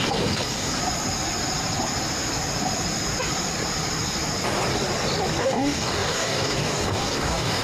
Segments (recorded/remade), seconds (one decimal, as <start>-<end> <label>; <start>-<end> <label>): 0.0-0.8 remade; 0.8-5.4 recorded; 5.4-7.6 remade